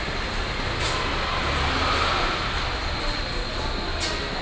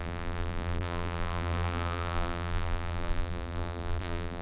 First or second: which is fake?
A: second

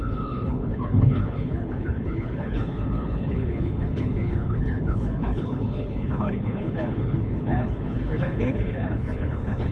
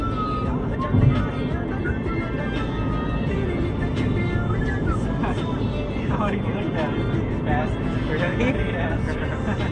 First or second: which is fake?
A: first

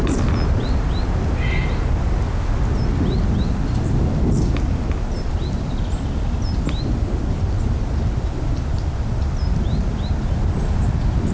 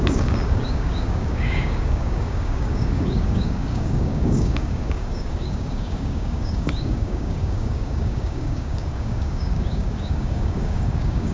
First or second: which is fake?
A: second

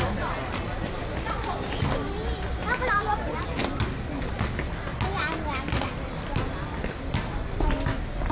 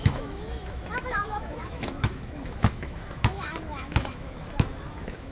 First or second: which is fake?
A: second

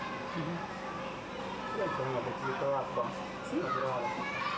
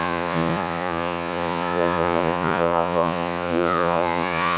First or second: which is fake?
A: second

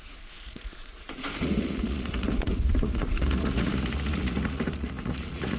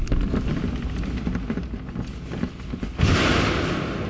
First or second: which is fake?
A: first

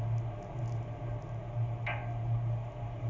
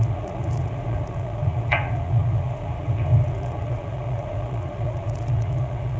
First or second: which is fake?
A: second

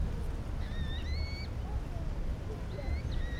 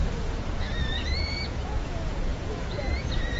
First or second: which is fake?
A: second